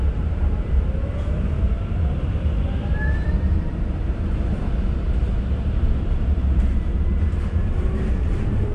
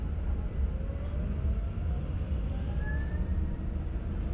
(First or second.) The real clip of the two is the second